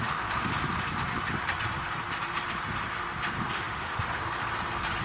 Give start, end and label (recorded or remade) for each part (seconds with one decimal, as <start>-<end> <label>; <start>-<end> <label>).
0.0-0.5 remade; 0.5-3.5 recorded; 3.5-4.2 remade; 4.2-5.0 recorded